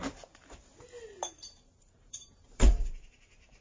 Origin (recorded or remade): remade